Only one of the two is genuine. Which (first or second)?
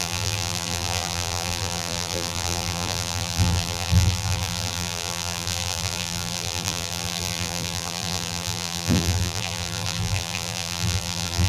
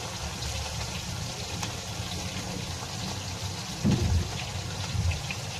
second